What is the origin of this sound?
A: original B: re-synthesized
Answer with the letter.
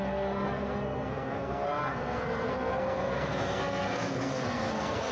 B